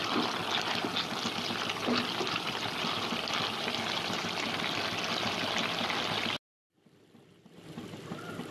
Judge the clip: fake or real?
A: real